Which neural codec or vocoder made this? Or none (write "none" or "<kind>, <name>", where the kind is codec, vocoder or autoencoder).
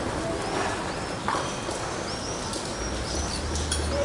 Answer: none